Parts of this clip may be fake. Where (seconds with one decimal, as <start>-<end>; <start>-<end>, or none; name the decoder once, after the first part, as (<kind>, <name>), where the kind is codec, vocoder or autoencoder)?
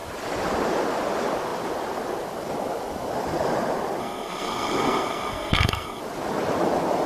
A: 4.0-6.0 (codec, SNAC)